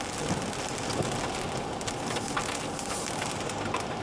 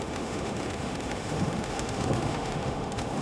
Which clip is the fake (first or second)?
second